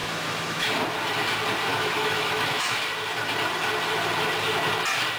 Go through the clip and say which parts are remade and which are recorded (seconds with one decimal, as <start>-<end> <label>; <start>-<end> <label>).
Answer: 0.0-0.7 remade; 0.7-1.7 recorded; 1.7-2.8 remade; 2.8-5.2 recorded

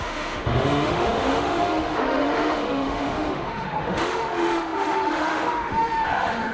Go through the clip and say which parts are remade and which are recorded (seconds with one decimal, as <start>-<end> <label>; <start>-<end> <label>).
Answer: 0.0-6.5 remade

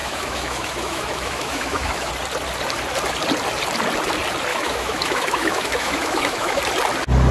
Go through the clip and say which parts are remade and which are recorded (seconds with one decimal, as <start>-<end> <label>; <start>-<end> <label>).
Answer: 0.0-2.1 remade; 2.1-4.5 recorded; 4.5-6.6 remade; 6.6-7.3 recorded

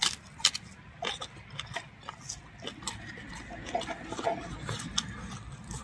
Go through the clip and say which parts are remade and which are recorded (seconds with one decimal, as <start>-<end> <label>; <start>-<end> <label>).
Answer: 0.0-5.8 recorded

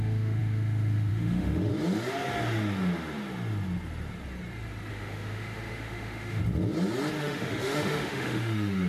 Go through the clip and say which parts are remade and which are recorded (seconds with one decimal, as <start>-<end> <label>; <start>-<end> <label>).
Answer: 0.0-1.7 remade; 1.7-4.9 recorded; 4.9-6.4 remade; 6.4-7.2 recorded; 7.2-8.9 remade

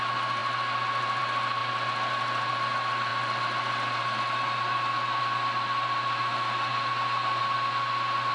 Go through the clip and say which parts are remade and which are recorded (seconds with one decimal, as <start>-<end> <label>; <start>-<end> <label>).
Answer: 0.0-8.3 recorded